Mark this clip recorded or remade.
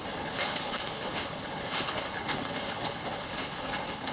remade